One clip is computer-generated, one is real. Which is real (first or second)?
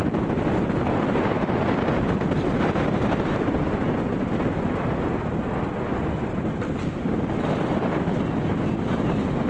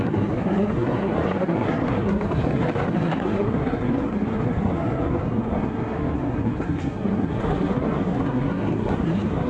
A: first